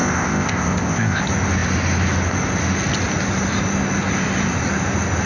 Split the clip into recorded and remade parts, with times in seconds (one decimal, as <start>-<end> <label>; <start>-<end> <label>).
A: 0.0-1.2 remade; 1.2-5.3 recorded